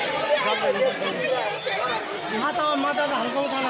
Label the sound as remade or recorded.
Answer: recorded